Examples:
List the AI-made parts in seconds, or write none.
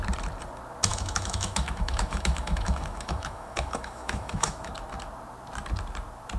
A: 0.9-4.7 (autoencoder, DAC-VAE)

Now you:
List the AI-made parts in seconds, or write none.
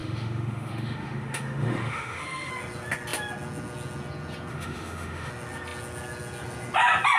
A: 0.0-2.5 (autoencoder, DAC-VAE); 4.5-5.3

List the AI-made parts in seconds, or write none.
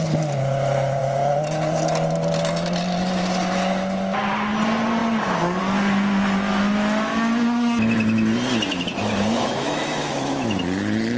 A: 8.7-10.6 (autoencoder, DAC-VAE)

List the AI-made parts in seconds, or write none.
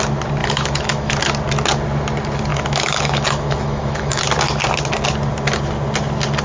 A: 0.4-1.2 (autoencoder, DAC-VAE); 2.5-4.2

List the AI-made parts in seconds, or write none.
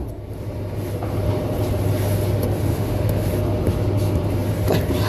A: 2.7-3.3 (autoencoder, DAC-VAE)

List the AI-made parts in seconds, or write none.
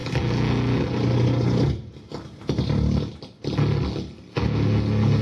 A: none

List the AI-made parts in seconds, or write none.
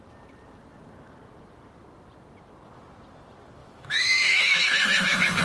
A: 3.6-5.4 (autoencoder, DAC-VAE)